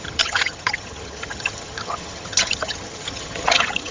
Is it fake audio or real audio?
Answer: fake